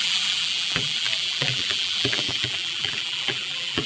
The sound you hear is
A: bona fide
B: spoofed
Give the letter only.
B